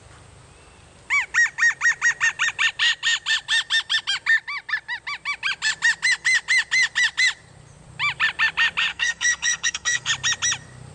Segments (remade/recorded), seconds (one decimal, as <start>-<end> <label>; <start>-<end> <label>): 0.0-8.9 recorded; 8.9-10.1 remade; 10.1-10.9 recorded